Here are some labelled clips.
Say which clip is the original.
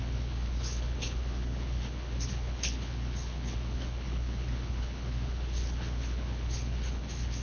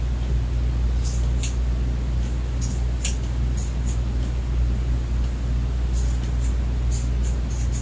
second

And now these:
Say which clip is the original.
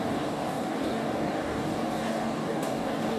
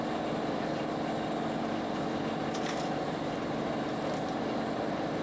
second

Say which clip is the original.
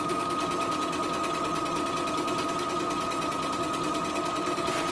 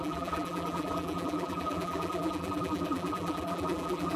first